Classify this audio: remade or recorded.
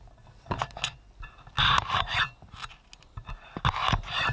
recorded